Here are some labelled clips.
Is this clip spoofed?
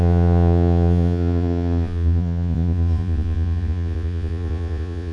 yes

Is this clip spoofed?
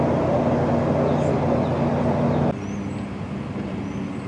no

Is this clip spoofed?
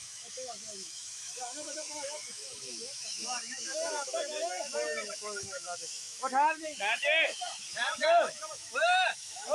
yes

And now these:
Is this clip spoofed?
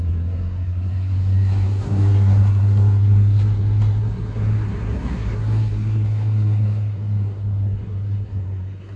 yes